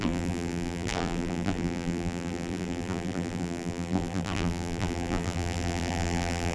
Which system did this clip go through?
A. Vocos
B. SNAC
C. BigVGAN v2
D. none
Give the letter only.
C